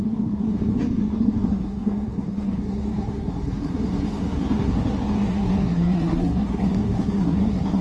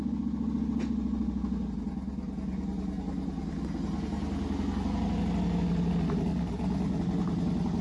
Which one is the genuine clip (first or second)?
second